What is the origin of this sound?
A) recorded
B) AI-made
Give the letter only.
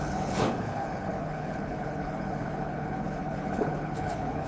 B